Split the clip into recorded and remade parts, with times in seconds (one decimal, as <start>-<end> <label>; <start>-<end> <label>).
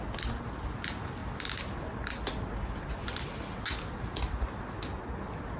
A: 0.0-5.6 recorded